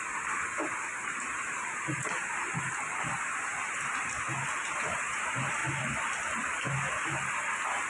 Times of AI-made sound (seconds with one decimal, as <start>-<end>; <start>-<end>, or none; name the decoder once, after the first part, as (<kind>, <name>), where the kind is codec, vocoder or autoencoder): none